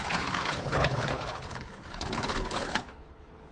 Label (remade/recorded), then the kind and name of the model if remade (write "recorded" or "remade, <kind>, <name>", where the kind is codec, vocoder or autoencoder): remade, codec, HILCodec